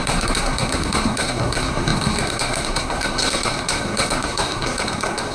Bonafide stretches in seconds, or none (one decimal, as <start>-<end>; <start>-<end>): none